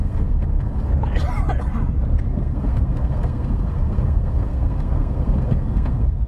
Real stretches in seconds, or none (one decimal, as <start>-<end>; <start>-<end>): 0.9-2.1